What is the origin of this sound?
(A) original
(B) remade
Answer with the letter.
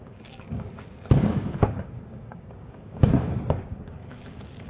B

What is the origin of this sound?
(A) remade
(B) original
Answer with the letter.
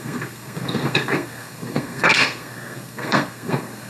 A